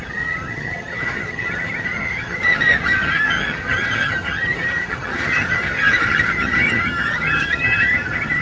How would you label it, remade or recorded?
remade